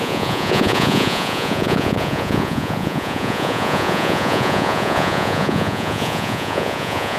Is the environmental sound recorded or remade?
remade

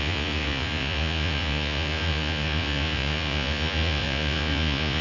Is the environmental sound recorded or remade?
remade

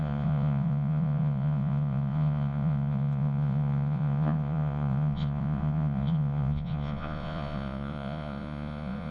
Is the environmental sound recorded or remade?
remade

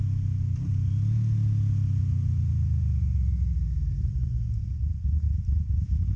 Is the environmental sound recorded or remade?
recorded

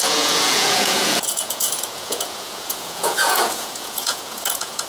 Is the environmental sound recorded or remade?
remade